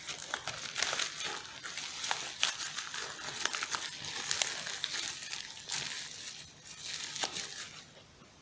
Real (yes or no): yes